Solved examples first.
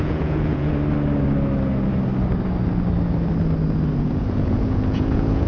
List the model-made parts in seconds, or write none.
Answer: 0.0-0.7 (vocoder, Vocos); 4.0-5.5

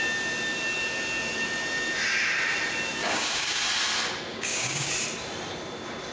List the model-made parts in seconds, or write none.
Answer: 3.0-3.6 (codec, DAC); 4.3-4.9